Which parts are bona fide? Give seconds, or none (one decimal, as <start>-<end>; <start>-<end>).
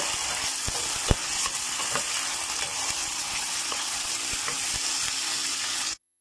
0.0-1.2; 2.0-3.0; 4.1-5.5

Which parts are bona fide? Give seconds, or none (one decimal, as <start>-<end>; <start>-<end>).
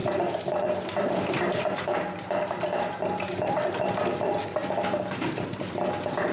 3.8-6.3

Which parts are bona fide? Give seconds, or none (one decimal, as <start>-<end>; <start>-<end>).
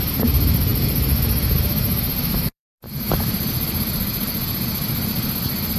0.0-0.7; 3.8-5.8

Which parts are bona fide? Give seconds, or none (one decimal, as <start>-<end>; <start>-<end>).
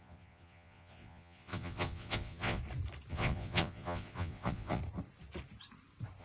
2.6-3.1; 4.8-6.2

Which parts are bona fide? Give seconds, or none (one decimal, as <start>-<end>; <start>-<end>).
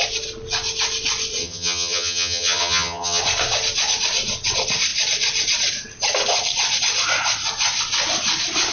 0.0-1.4; 3.2-8.7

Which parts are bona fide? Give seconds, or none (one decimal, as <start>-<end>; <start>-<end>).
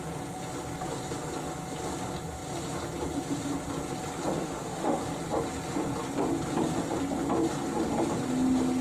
0.0-4.4; 5.0-8.8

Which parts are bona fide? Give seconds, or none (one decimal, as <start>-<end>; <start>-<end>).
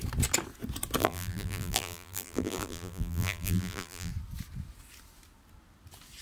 0.0-1.0; 4.1-6.2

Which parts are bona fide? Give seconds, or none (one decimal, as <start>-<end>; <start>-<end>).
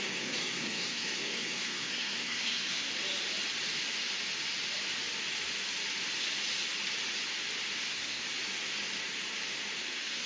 2.9-7.8; 8.2-9.8